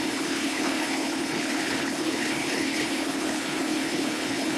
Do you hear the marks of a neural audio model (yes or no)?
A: yes